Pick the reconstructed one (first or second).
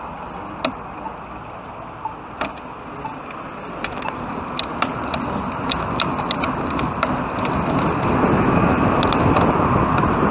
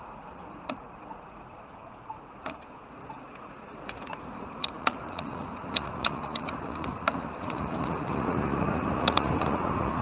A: second